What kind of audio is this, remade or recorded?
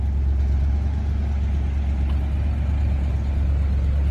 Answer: recorded